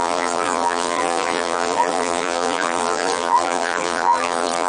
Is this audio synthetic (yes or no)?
yes